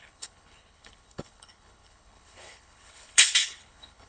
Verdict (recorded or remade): remade